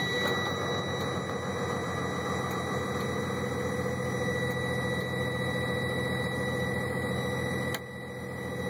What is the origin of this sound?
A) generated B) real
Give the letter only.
B